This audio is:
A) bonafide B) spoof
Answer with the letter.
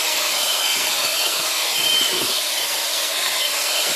B